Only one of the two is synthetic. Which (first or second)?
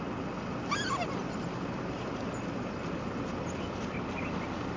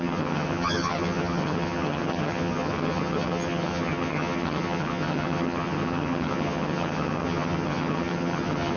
second